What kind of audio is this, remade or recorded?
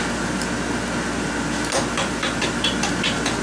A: recorded